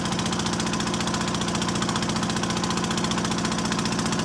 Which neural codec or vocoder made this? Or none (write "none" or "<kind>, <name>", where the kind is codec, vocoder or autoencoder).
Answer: none